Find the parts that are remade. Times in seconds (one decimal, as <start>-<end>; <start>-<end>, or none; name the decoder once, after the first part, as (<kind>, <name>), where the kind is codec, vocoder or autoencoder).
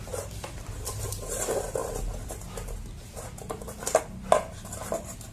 none